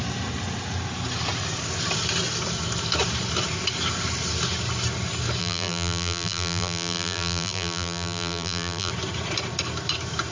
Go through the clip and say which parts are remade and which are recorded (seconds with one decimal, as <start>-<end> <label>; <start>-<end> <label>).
0.0-5.4 recorded; 5.4-8.9 remade; 8.9-10.3 recorded